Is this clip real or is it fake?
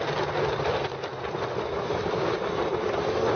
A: real